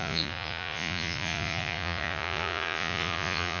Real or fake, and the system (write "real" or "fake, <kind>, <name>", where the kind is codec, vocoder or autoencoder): fake, vocoder, Vocos